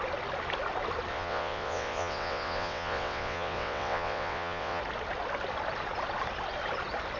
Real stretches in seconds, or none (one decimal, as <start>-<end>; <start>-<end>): 0.0-1.1; 4.8-7.2